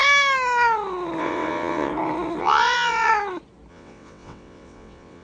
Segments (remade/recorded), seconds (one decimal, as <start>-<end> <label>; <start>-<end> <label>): 0.0-1.2 recorded; 1.2-1.9 remade; 1.9-2.4 recorded; 2.4-3.1 remade; 3.1-3.7 recorded; 3.7-5.2 remade